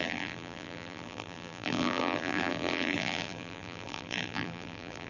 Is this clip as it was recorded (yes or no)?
no